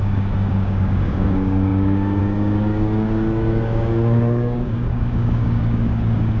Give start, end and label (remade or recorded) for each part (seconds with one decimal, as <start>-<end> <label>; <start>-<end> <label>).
0.0-6.4 remade